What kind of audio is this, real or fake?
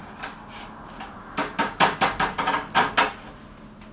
real